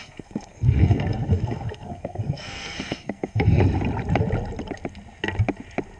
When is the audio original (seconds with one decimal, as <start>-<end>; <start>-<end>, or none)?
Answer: 3.6-6.0